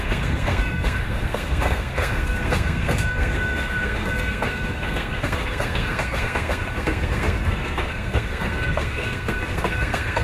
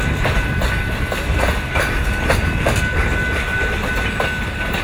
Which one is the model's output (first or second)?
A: first